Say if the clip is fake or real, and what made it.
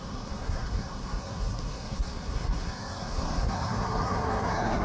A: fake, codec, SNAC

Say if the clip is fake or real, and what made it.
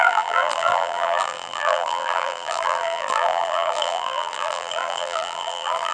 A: fake, vocoder, BigVGAN v2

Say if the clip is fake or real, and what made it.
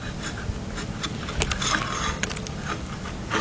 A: real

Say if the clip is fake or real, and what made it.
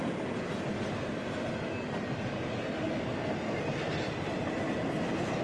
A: real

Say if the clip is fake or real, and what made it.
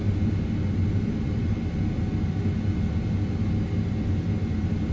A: real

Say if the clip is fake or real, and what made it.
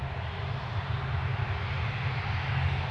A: real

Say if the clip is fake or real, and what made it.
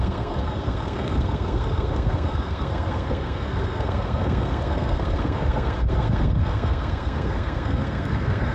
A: fake, codec, SNAC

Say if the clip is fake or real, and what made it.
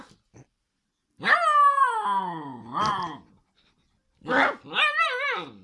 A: real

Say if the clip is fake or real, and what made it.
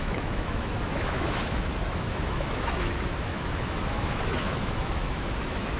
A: fake, autoencoder, DAC-VAE